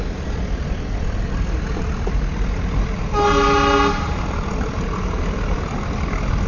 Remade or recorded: recorded